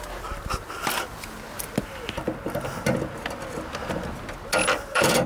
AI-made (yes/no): no